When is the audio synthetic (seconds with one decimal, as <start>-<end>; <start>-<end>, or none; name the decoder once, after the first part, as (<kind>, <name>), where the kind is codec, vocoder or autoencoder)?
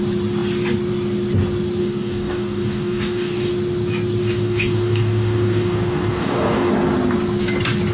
1.8-3.5 (codec, DAC); 4.2-6.7